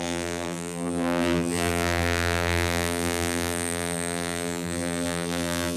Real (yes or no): no